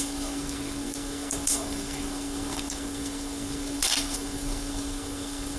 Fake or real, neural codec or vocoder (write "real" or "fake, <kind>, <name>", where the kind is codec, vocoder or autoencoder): fake, codec, SNAC